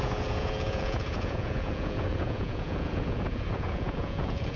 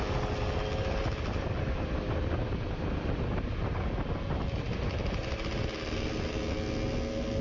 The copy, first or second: first